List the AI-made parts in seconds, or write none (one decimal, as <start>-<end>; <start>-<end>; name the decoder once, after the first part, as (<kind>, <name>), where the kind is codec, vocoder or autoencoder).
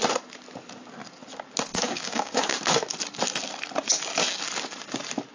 1.7-2.6 (codec, DAC)